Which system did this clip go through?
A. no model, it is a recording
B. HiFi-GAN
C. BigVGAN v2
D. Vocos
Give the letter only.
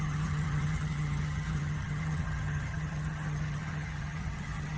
B